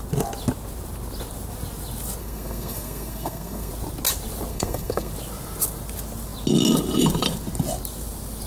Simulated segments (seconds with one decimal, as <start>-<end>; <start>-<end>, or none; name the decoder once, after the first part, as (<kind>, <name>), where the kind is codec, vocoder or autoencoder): 2.2-3.7 (codec, SNAC); 4.5-5.1